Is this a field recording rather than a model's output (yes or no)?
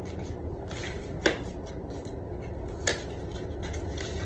yes